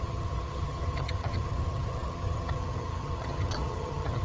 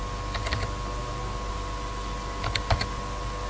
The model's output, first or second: first